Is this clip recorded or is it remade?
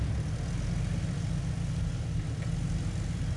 recorded